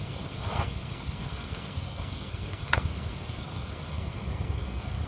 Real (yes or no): no